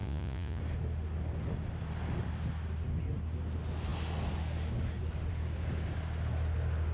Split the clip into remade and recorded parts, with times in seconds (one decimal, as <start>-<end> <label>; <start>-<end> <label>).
0.0-0.6 remade; 0.6-6.9 recorded